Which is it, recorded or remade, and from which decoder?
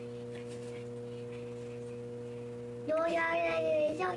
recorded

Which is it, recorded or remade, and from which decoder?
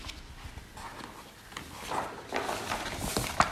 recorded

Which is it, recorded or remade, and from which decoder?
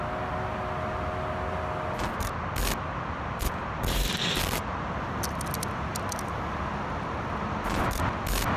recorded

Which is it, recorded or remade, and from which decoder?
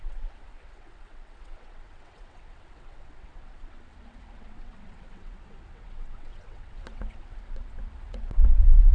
remade, vocoder, WaveNeXt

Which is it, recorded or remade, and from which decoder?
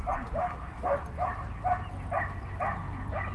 recorded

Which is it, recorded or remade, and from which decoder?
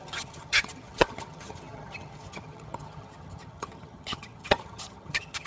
remade, vocoder, HiFi-GAN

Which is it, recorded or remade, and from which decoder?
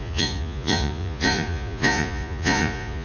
remade, vocoder, Vocos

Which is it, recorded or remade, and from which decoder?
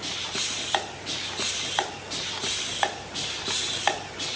recorded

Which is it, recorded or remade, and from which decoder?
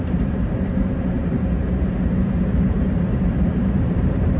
remade, vocoder, BigVGAN v2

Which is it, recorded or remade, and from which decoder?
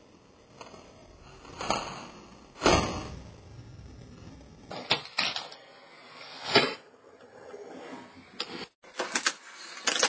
recorded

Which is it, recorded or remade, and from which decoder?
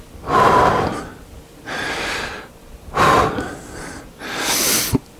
remade, vocoder, BigVGAN v2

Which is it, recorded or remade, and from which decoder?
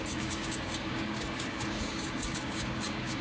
remade, codec, DAC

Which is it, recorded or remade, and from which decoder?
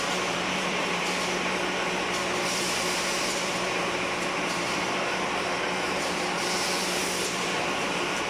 remade, vocoder, BigVGAN v2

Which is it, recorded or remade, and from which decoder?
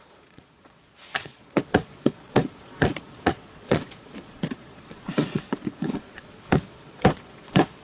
remade, vocoder, Vocos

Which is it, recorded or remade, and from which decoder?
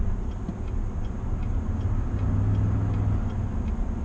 recorded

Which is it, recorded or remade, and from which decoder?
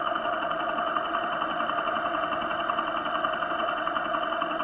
recorded